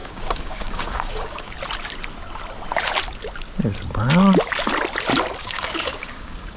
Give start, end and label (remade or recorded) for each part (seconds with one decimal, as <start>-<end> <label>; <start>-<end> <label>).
0.0-1.5 remade; 1.5-5.4 recorded; 5.4-6.6 remade